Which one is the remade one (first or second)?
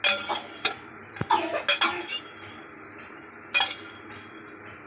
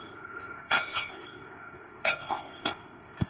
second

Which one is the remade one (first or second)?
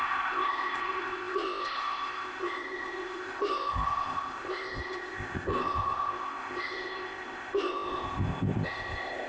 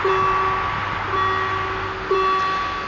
first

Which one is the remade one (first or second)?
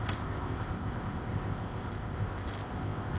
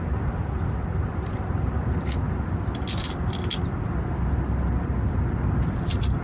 first